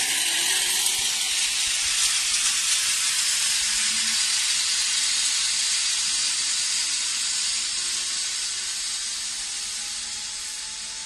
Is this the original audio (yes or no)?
yes